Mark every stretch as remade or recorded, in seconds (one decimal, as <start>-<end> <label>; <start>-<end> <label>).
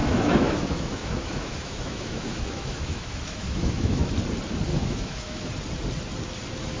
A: 0.0-4.1 remade; 4.1-4.7 recorded; 4.7-5.5 remade; 5.5-6.8 recorded